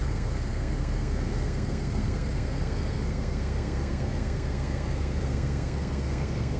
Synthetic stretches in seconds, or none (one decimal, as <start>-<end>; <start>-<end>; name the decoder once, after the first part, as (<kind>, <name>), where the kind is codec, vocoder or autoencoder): 0.0-6.6 (codec, SNAC)